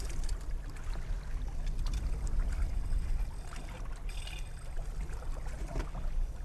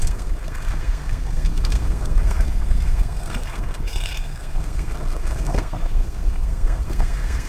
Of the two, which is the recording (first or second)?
first